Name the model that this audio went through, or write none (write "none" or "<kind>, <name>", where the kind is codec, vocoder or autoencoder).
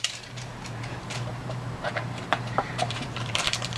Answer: vocoder, BigVGAN v2